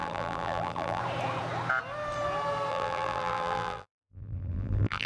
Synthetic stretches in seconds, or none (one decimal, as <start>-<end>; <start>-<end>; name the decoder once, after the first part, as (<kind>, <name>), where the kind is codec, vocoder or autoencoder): 0.0-1.0 (vocoder, BigVGAN v2); 2.7-5.1